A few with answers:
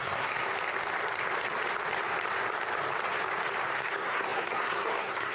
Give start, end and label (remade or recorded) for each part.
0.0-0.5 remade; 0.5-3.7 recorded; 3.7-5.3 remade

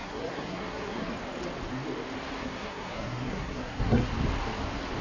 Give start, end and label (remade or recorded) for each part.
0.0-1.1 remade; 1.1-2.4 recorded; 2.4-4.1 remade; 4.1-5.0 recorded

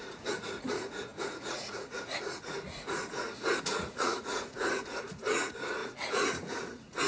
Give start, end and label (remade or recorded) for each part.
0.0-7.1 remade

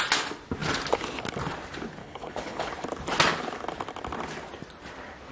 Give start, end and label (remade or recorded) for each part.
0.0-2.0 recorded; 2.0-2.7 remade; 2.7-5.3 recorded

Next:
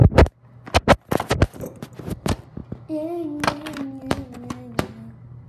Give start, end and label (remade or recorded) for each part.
0.0-5.5 recorded

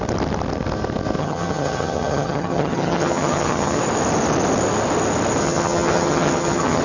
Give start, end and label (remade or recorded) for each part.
0.0-1.2 recorded; 1.2-3.8 remade; 3.8-5.4 recorded; 5.4-6.8 remade

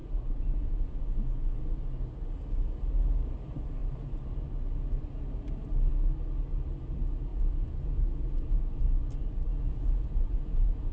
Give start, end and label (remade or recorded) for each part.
0.0-1.6 remade; 1.6-7.3 recorded; 7.3-8.8 remade; 8.8-9.5 recorded; 9.5-10.9 remade

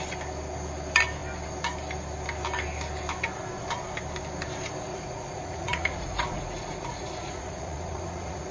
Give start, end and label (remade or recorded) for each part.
0.0-4.9 recorded; 4.9-8.5 remade